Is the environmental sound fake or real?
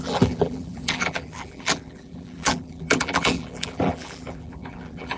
fake